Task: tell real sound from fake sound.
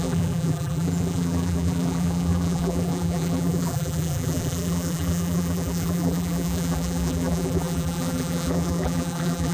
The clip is fake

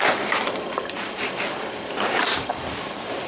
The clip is fake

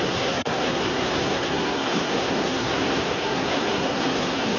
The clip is fake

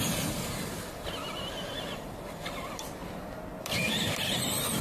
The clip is real